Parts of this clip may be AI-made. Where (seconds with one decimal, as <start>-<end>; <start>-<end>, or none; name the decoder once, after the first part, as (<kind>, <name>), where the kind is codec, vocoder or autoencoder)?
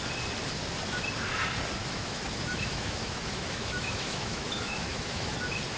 1.8-5.3 (autoencoder, DAC-VAE)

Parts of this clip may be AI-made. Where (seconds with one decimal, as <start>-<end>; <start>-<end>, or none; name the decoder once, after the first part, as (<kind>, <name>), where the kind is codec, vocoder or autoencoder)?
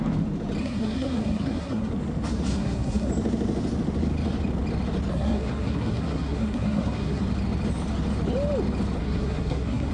0.6-1.9 (codec, SNAC); 2.5-3.1; 5.1-7.2; 9.0-9.9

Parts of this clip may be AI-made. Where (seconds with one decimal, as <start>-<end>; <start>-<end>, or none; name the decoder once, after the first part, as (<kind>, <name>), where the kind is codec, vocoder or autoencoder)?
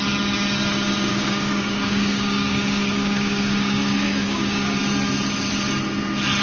1.1-4.8 (codec, DAC)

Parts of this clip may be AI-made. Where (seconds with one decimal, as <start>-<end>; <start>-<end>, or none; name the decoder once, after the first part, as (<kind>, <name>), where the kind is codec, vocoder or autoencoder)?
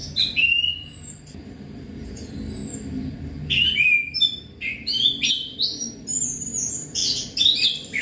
1.4-2.6 (vocoder, BigVGAN v2); 5.3-8.0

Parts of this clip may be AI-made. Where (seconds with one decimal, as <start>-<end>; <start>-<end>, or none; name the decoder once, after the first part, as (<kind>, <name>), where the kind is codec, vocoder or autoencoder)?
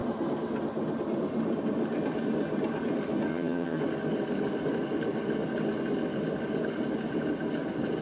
3.3-3.8 (vocoder, HiFi-GAN)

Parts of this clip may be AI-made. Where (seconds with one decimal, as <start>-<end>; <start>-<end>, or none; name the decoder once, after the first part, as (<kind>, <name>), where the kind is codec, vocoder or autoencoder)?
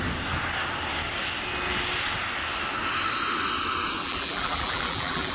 4.0-5.3 (vocoder, BigVGAN v2)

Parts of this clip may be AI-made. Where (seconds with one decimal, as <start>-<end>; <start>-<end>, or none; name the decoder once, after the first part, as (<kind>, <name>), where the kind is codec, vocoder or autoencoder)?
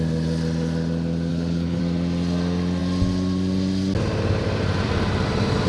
1.3-1.8 (codec, HILCodec)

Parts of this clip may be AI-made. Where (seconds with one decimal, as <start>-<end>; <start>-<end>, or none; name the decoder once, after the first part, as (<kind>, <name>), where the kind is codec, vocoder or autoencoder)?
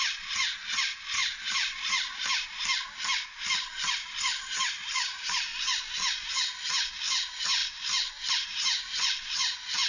0.0-1.6 (vocoder, Vocos); 3.9-5.5; 6.3-7.6; 8.3-9.9